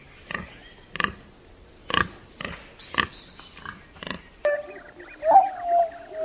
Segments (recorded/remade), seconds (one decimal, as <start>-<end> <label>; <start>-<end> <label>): 0.0-6.2 recorded